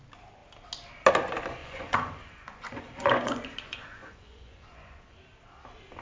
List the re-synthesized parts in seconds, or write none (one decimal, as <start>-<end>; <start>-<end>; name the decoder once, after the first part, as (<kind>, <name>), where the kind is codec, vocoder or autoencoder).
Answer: 1.6-5.2 (vocoder, Vocos)